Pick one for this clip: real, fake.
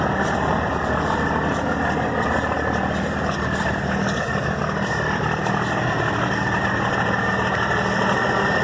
real